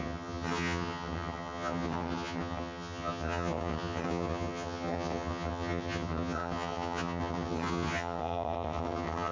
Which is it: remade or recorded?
remade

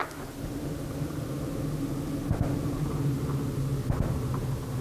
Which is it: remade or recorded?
recorded